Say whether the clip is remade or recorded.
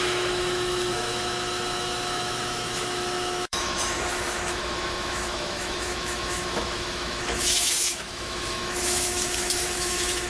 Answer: remade